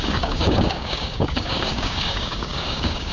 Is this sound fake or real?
fake